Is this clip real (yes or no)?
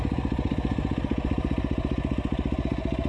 yes